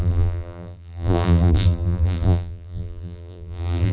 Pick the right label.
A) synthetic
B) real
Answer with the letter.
A